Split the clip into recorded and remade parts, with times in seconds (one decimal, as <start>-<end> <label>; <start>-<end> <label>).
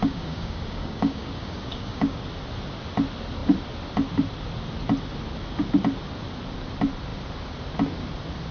0.0-2.2 remade; 2.2-8.5 recorded